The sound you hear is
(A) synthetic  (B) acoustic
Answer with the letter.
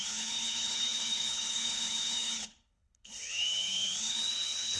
A